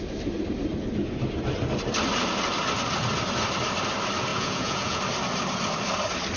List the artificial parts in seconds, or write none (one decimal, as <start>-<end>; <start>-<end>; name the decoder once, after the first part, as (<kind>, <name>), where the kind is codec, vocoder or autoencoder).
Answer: 4.3-5.0 (vocoder, Vocos)